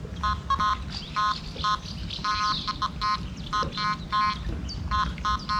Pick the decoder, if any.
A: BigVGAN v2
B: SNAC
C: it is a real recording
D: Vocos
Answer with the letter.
C